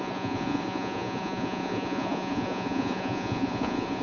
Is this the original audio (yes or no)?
no